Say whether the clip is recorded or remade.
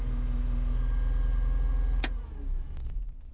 recorded